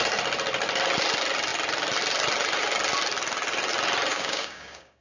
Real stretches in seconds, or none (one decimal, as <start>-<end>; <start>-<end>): 0.0-4.1